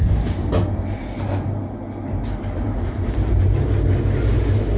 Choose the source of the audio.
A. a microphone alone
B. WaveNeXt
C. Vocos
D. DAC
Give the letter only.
A